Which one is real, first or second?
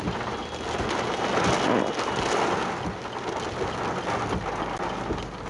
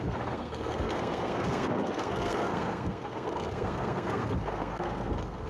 first